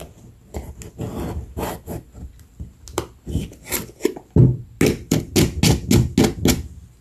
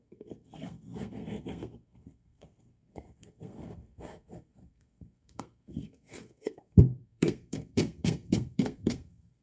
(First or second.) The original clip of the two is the first